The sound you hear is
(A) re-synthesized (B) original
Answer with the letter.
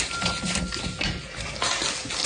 B